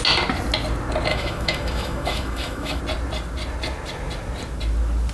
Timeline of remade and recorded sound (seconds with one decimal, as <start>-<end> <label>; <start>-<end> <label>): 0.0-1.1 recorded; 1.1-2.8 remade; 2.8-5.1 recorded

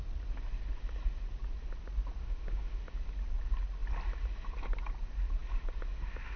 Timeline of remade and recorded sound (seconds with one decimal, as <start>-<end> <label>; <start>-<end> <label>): 0.0-2.2 recorded; 2.2-2.8 remade; 2.8-6.4 recorded

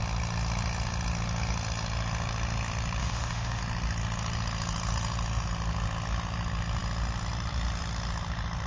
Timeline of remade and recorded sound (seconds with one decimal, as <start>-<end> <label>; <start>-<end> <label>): 0.0-3.0 recorded; 3.0-3.6 remade; 3.6-8.7 recorded